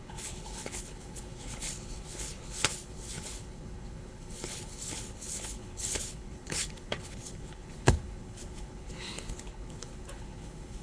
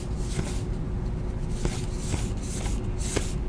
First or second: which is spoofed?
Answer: first